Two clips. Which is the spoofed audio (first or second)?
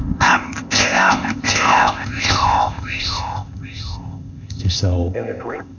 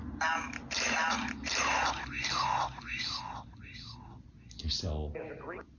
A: first